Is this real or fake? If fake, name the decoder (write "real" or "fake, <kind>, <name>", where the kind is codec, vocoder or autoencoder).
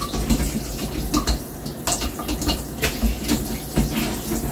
real